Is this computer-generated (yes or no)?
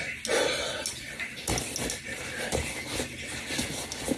no